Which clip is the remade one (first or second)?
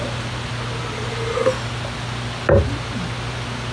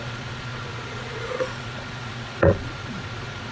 second